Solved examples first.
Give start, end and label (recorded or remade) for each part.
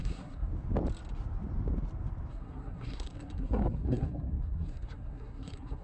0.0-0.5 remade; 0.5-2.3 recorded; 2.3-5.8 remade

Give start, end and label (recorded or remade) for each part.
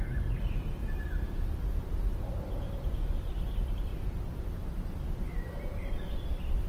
0.0-0.8 remade; 0.8-2.5 recorded; 2.5-3.9 remade; 3.9-5.8 recorded; 5.8-6.7 remade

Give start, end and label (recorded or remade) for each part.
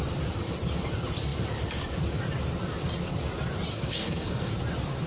0.0-3.7 recorded; 3.7-4.5 remade; 4.5-5.1 recorded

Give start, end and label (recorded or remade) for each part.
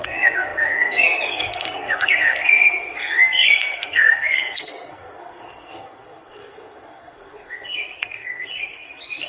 0.0-9.3 remade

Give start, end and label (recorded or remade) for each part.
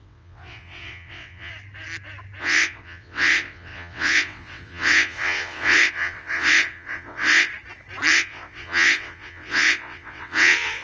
0.0-1.5 remade; 1.5-2.4 recorded; 2.4-7.5 remade; 7.5-8.1 recorded; 8.1-10.8 remade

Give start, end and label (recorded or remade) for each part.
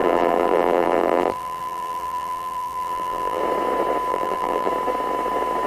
0.0-3.4 remade; 3.4-4.1 recorded; 4.1-4.7 remade; 4.7-5.7 recorded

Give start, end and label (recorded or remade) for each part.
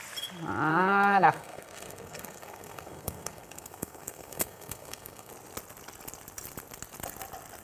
0.0-0.7 recorded; 0.7-5.3 remade; 5.3-7.6 recorded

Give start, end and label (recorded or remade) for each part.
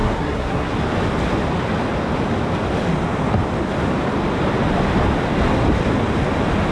0.0-0.7 remade; 0.7-6.7 recorded